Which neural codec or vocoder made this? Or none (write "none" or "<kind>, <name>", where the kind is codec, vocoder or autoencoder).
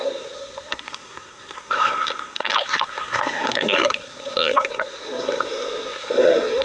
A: codec, SNAC